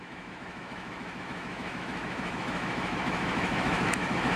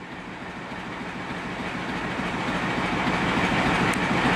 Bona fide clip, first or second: second